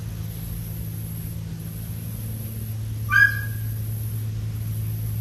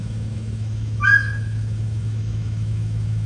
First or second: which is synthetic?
second